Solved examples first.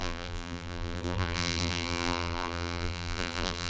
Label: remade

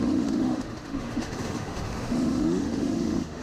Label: remade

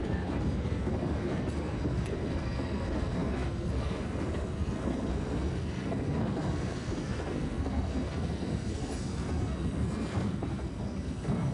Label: remade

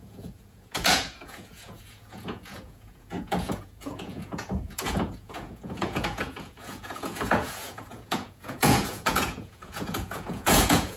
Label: remade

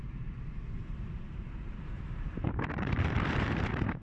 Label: remade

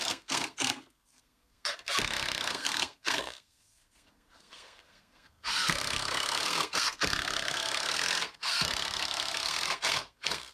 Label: remade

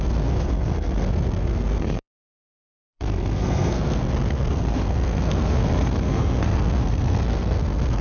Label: remade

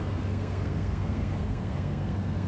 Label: remade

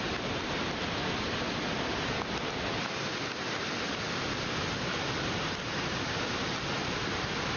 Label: recorded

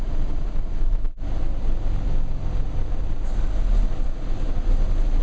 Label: recorded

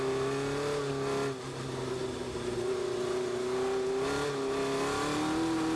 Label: recorded